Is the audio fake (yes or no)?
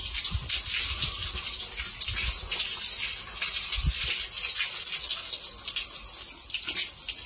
no